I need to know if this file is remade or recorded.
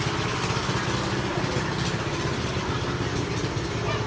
recorded